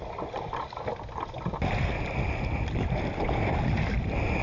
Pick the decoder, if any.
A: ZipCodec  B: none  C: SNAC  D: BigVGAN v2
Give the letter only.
B